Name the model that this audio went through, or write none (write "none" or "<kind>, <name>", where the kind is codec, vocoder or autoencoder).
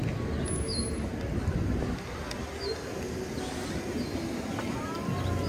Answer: none